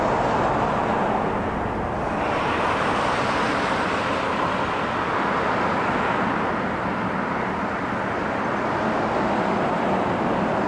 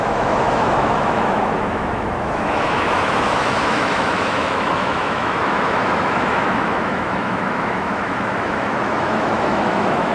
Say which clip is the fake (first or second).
second